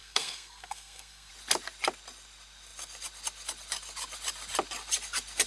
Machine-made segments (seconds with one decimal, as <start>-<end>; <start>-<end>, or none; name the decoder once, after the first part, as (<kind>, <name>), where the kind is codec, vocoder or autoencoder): 0.0-1.3 (codec, SNAC)